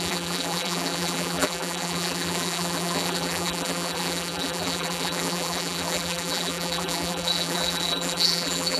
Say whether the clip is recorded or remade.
remade